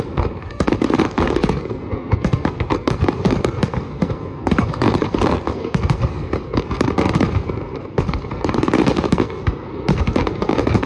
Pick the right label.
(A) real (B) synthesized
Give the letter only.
B